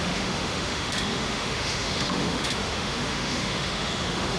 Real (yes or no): no